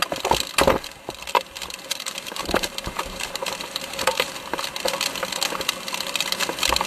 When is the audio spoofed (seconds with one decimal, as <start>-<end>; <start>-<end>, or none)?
1.9-4.3